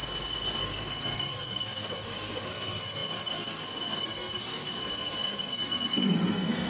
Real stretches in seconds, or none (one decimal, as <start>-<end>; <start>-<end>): 0.0-0.6